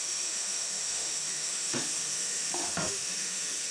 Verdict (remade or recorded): remade